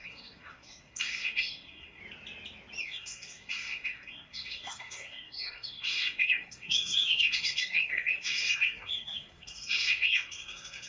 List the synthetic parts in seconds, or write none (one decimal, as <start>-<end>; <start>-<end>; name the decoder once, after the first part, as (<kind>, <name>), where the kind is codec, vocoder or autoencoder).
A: 0.0-2.0 (codec, SNAC); 2.8-10.9